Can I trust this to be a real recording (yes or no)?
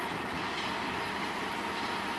yes